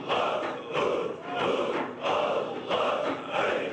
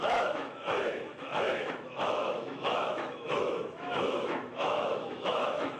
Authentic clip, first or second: first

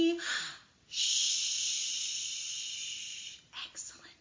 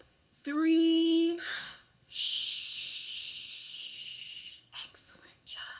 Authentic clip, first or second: first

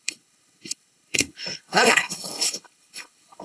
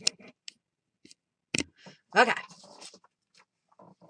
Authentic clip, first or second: second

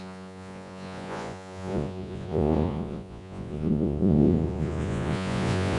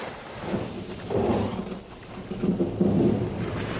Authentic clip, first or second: second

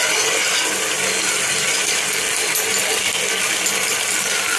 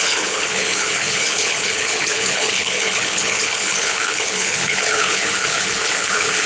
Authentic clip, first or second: first